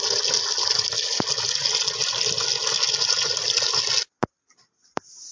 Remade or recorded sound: recorded